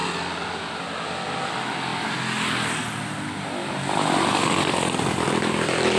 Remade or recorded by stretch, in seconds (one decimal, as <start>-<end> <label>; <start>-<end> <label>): 0.0-6.0 recorded